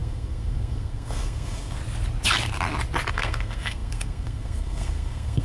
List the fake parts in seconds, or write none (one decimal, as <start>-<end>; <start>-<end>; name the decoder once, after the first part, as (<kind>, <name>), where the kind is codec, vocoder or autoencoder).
0.0-1.8 (codec, SNAC); 3.1-5.4